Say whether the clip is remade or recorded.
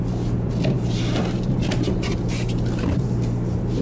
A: recorded